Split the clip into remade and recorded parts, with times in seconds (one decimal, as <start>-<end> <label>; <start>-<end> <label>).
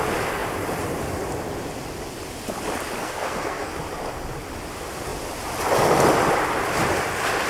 0.0-3.0 recorded; 3.0-3.7 remade; 3.7-7.5 recorded